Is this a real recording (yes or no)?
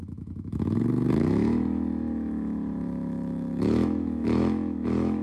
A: no